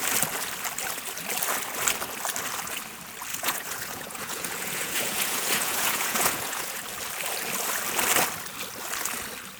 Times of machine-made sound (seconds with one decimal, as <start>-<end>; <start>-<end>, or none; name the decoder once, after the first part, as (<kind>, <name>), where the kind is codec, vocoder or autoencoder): 3.3-6.8 (vocoder, Vocos)